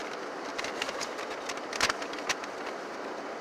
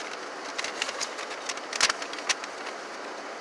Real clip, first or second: second